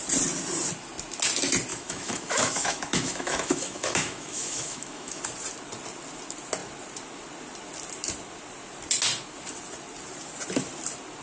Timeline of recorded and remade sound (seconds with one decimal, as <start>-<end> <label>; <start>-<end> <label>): 0.0-1.7 recorded; 1.7-5.2 remade; 5.2-11.2 recorded